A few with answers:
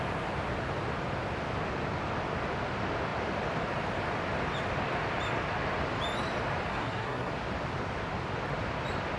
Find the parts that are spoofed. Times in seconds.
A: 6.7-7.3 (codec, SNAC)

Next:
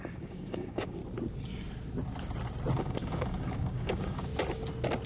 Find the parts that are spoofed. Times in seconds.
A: 0.0-1.0 (codec, DAC); 2.8-4.3

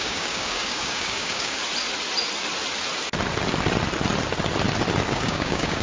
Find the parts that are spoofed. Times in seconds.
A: 0.0-1.6 (codec, DAC); 5.1-5.8

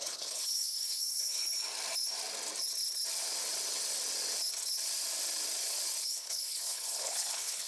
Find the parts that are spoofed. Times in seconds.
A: 0.0-1.4 (codec, HILCodec); 6.0-7.7

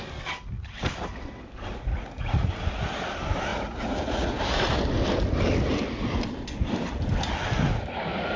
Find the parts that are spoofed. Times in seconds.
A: 1.9-2.5 (vocoder, Vocos); 3.5-4.4